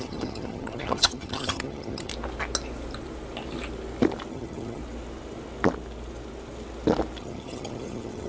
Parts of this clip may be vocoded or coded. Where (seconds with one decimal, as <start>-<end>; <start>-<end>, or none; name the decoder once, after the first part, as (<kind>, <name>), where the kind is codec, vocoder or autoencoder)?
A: 0.0-2.1 (vocoder, HiFi-GAN); 4.3-4.8; 7.2-8.3